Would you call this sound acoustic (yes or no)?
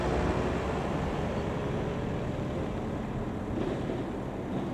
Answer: yes